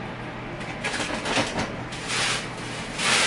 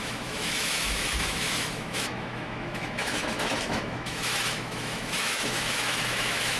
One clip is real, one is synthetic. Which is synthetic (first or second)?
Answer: second